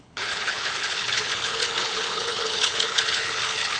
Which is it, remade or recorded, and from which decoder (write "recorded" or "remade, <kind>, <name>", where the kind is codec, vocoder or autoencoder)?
remade, codec, HILCodec